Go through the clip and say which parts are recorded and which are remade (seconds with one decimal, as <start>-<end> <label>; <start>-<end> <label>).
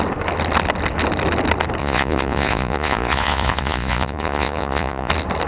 0.0-1.8 recorded; 1.8-5.1 remade; 5.1-5.5 recorded